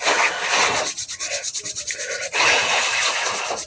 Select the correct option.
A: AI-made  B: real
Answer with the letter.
B